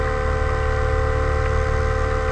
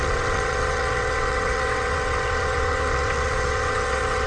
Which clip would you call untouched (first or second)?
first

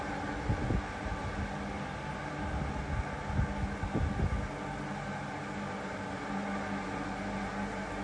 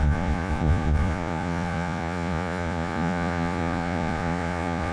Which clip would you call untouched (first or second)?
first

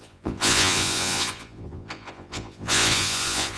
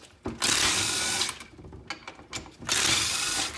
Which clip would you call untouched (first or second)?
second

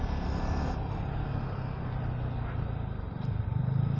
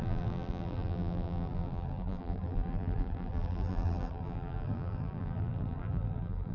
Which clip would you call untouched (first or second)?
first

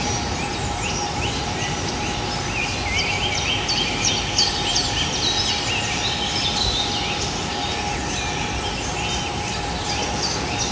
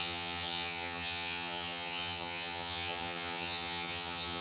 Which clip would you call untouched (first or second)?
first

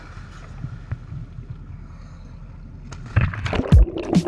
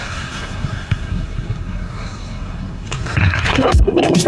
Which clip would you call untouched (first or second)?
first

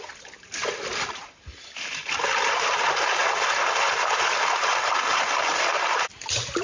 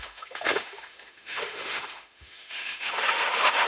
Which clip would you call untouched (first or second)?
first